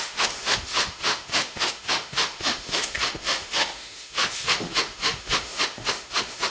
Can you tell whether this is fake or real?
fake